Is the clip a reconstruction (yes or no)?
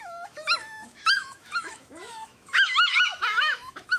yes